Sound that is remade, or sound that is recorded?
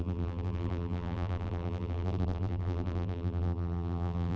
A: remade